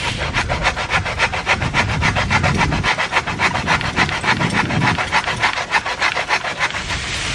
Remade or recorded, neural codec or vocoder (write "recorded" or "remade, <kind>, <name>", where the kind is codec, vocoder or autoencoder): recorded